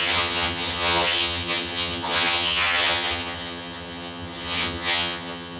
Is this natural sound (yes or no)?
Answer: no